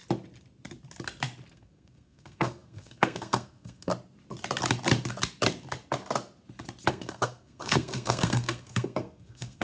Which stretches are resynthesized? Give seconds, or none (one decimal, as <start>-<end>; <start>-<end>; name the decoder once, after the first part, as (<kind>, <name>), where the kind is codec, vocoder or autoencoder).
1.5-3.9 (codec, SNAC); 6.9-9.6